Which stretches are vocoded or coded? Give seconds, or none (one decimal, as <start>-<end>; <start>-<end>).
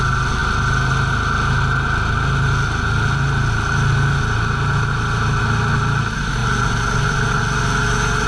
none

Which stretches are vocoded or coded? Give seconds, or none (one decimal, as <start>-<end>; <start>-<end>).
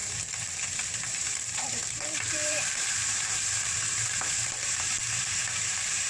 0.0-6.1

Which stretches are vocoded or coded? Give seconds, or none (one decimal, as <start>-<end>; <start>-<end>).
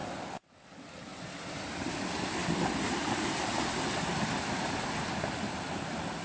none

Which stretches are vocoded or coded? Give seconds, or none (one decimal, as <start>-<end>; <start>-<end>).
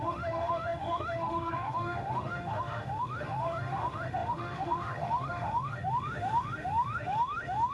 0.0-7.7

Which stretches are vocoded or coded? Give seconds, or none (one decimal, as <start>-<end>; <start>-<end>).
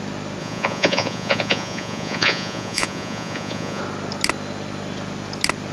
0.4-3.8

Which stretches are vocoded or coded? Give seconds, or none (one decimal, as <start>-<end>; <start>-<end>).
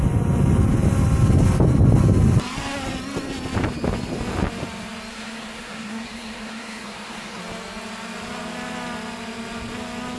5.1-7.4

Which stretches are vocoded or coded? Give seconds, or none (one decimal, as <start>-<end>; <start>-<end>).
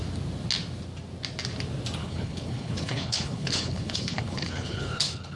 2.0-5.4